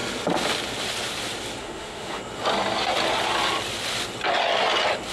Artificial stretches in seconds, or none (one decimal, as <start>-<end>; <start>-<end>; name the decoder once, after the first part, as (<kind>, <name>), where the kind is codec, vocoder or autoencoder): 1.6-2.2 (autoencoder, DAC-VAE)